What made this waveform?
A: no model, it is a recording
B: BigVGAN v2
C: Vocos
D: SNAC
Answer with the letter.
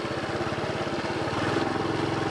A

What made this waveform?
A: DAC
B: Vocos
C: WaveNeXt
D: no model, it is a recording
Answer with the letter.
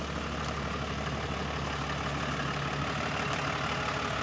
D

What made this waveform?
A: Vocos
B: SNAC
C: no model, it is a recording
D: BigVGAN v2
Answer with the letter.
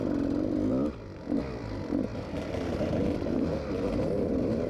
C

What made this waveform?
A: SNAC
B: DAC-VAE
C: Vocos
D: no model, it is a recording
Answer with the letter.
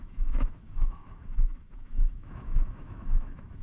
B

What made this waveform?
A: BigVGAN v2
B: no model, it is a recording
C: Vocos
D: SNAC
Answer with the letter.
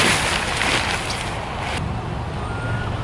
B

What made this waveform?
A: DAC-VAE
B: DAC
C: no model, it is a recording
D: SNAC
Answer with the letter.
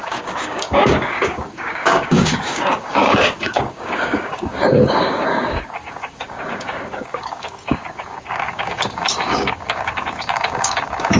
B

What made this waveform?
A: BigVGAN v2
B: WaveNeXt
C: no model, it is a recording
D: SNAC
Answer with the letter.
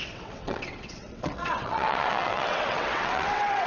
B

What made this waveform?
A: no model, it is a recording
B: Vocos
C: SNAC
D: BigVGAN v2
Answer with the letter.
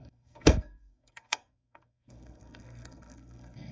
C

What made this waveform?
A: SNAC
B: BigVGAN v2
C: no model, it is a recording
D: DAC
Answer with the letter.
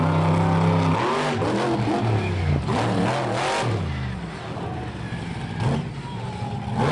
C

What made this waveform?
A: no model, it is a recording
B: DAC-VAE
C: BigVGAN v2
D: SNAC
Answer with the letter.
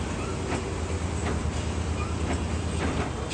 A